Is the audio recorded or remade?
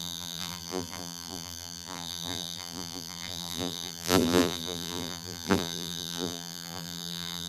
remade